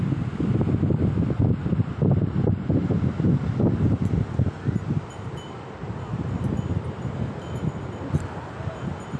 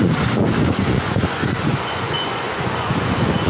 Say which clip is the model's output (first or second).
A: second